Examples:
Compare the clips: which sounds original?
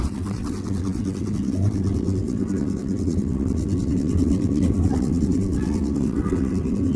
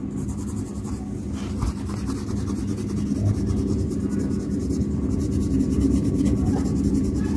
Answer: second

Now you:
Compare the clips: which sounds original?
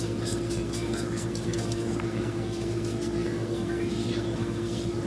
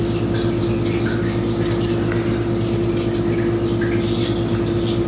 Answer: second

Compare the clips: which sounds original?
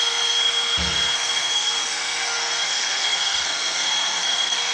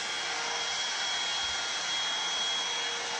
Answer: second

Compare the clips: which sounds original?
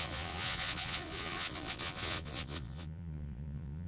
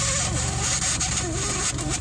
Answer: second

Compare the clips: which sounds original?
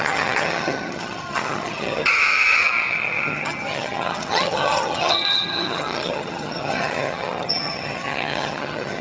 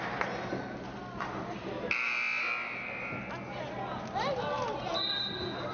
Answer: second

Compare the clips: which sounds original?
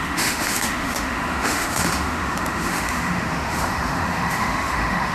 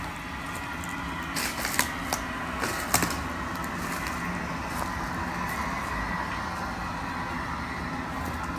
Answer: second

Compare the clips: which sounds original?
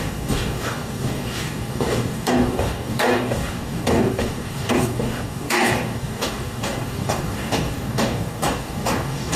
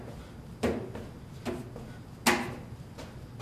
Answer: second